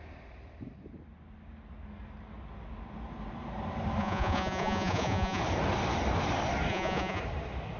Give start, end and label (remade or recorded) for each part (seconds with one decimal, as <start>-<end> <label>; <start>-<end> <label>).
0.0-4.0 recorded; 4.0-5.4 remade; 5.4-6.7 recorded; 6.7-7.2 remade; 7.2-7.8 recorded